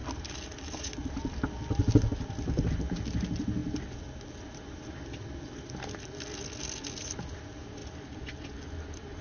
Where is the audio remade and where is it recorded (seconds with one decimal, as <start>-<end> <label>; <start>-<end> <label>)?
0.0-3.6 recorded; 3.6-4.3 remade; 4.3-7.8 recorded; 7.8-9.2 remade